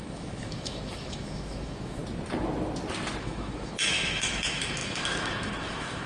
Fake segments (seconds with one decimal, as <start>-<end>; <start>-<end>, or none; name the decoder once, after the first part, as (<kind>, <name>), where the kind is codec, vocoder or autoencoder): 0.0-2.0 (autoencoder, DAC-VAE); 3.2-6.1